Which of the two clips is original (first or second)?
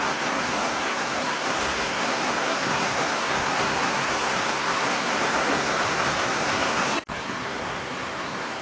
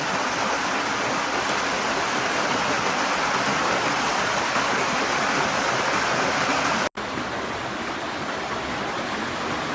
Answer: second